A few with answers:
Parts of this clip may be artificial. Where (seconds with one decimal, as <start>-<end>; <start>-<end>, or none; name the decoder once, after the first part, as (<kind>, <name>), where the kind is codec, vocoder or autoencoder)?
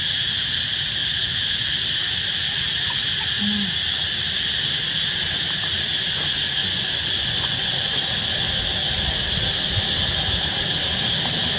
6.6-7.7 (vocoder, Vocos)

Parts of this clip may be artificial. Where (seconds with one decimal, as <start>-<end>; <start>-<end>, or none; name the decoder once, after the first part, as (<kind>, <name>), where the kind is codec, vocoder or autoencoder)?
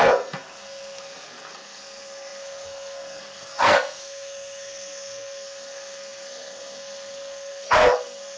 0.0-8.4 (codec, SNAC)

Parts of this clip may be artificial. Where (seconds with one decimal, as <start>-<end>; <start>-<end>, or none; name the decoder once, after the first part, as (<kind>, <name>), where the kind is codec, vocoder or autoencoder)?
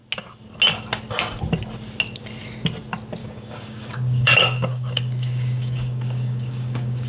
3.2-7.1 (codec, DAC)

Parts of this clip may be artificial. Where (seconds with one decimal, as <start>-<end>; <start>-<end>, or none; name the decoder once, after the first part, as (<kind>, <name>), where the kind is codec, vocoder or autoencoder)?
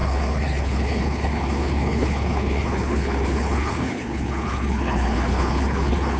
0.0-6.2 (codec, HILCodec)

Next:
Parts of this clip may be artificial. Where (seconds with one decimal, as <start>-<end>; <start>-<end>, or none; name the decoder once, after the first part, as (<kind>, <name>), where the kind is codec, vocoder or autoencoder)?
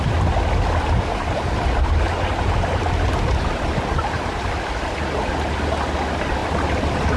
none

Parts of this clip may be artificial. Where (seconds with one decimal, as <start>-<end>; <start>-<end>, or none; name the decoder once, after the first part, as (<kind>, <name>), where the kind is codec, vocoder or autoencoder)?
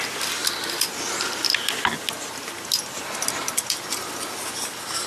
none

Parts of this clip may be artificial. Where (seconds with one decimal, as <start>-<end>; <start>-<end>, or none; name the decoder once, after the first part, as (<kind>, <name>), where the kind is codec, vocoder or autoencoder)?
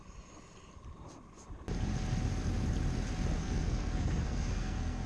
3.4-5.1 (codec, SNAC)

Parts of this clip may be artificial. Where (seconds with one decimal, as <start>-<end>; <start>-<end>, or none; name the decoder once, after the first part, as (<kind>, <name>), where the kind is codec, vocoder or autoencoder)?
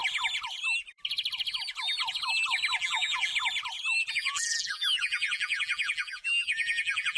2.8-3.3 (vocoder, BigVGAN v2); 4.1-7.2